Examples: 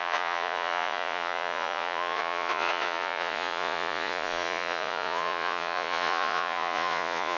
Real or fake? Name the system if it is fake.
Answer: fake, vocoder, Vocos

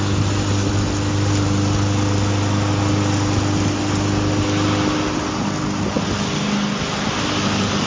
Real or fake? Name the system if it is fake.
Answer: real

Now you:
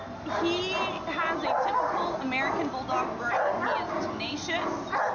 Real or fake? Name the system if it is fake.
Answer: real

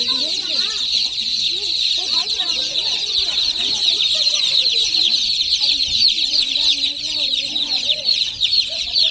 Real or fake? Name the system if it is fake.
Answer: fake, vocoder, Vocos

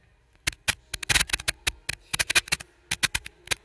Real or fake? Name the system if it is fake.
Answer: real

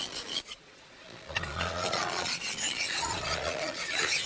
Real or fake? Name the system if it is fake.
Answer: fake, vocoder, Vocos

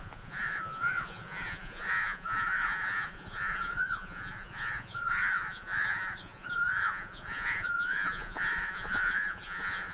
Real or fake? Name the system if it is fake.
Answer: fake, vocoder, Vocos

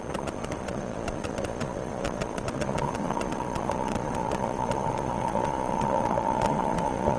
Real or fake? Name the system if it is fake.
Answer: fake, vocoder, Vocos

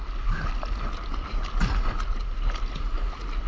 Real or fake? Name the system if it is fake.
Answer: real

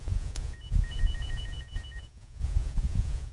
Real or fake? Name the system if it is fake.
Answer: fake, vocoder, Vocos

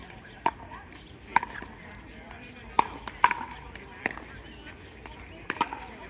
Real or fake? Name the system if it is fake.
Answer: real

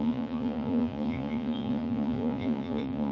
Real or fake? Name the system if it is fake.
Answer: fake, vocoder, Vocos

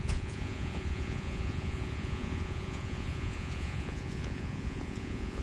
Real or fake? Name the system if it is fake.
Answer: fake, vocoder, Vocos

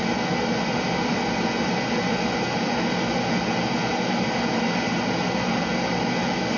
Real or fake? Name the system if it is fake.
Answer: real